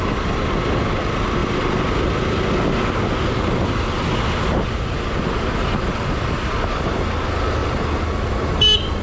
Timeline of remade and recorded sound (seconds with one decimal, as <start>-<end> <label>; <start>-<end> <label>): 0.0-9.0 recorded